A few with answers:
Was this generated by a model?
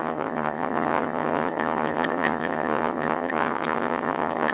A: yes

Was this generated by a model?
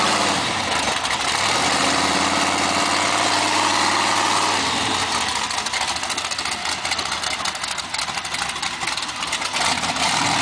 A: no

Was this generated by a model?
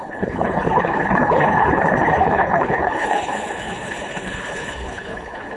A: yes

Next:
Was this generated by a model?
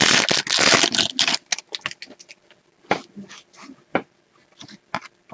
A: no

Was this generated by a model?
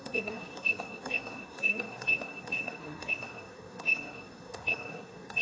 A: yes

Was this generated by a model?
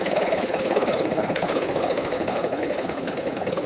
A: yes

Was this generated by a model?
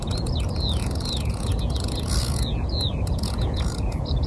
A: yes